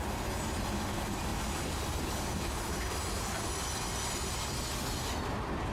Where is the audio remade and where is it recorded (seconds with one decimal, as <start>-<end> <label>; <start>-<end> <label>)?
0.0-5.7 recorded